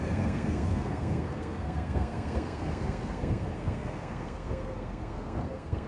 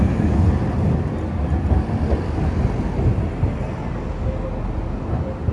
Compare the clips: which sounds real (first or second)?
second